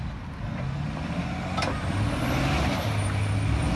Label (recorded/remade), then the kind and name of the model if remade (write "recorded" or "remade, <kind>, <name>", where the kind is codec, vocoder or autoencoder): recorded